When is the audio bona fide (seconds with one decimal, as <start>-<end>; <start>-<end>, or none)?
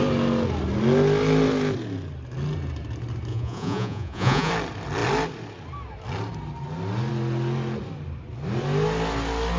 0.0-3.3; 4.5-9.6